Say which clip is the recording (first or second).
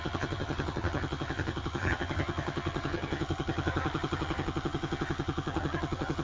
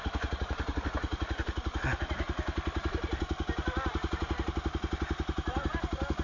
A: second